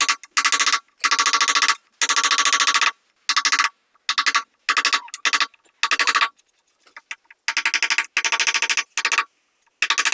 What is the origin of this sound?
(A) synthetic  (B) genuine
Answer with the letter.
B